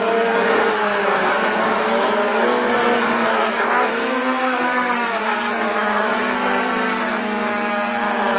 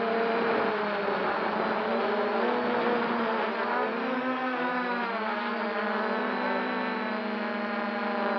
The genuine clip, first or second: second